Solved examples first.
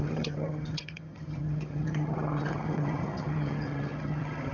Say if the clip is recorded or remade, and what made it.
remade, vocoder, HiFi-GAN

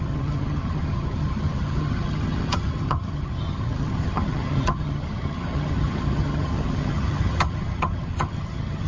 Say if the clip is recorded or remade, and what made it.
remade, vocoder, HiFi-GAN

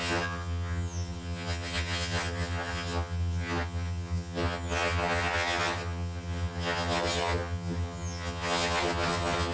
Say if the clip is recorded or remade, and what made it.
remade, vocoder, HiFi-GAN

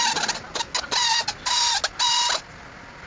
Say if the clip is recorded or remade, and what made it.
recorded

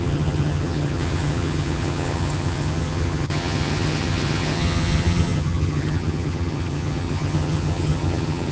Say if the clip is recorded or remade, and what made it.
remade, vocoder, HiFi-GAN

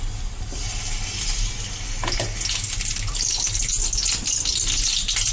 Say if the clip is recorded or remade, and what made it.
recorded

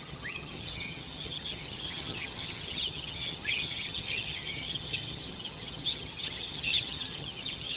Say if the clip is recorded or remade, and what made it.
remade, vocoder, HiFi-GAN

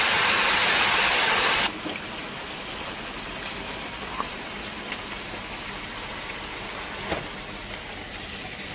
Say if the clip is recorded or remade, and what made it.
recorded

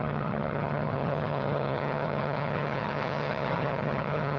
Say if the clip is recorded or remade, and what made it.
remade, vocoder, HiFi-GAN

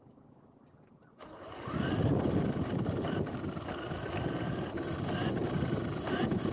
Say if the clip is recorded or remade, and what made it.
recorded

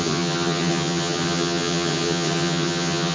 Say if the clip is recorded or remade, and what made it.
remade, vocoder, HiFi-GAN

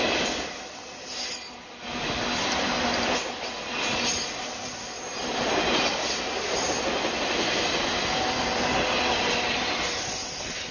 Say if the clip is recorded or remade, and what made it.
recorded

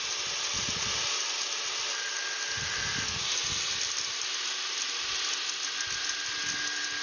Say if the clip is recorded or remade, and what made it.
recorded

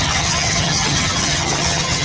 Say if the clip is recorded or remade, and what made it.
remade, vocoder, HiFi-GAN